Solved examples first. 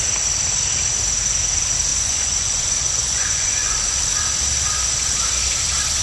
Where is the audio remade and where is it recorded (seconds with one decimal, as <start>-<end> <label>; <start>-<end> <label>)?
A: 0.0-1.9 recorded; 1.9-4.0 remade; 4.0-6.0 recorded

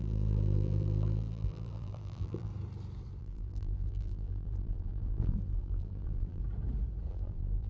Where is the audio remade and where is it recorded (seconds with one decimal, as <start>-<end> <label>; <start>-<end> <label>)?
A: 0.0-2.5 remade; 2.5-3.2 recorded; 3.2-6.4 remade; 6.4-7.1 recorded; 7.1-7.7 remade

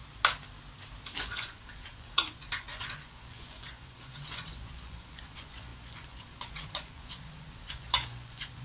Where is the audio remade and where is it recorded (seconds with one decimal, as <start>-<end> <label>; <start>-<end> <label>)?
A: 0.0-1.2 recorded; 1.2-8.6 remade